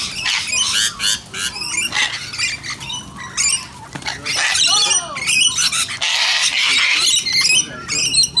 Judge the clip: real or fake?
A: real